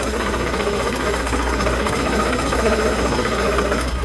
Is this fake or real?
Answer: fake